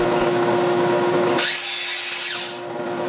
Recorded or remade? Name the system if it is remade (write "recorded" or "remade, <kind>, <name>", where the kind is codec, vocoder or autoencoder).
recorded